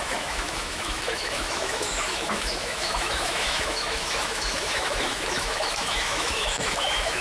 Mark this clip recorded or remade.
remade